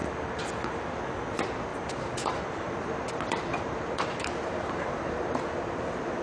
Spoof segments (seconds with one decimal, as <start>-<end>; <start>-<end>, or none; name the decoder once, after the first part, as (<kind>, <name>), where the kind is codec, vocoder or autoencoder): 1.7-5.4 (vocoder, BigVGAN v2)